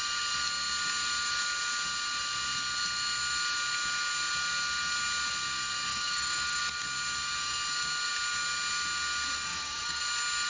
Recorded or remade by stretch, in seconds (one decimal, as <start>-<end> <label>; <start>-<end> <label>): 0.0-5.9 recorded; 5.9-6.6 remade; 6.6-9.5 recorded; 9.5-10.0 remade; 10.0-10.5 recorded

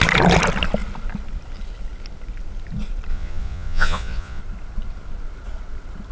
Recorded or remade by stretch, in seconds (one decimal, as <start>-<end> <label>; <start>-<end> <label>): 0.0-3.1 recorded; 3.1-4.4 remade; 4.4-6.1 recorded

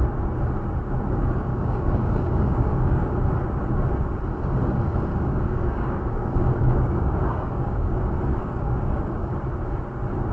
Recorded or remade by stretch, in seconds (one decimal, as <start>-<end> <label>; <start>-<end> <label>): 0.0-1.5 recorded; 1.5-3.1 remade; 3.1-5.1 recorded; 5.1-8.0 remade; 8.0-8.4 recorded; 8.4-9.3 remade; 9.3-10.3 recorded

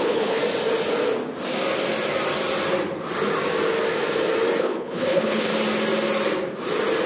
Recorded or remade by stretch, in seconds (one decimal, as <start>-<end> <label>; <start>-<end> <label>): 0.0-0.4 remade; 0.4-4.6 recorded; 4.6-5.5 remade; 5.5-7.1 recorded

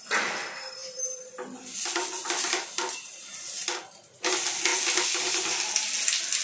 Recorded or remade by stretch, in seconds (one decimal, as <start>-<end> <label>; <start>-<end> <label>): 0.0-6.4 recorded

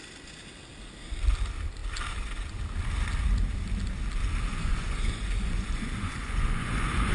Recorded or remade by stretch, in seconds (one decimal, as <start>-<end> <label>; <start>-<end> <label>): 0.0-4.5 recorded; 4.5-7.1 remade